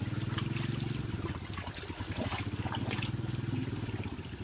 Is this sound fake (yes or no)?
no